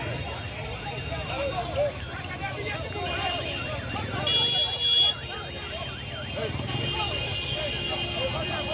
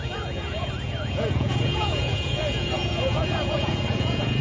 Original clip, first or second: first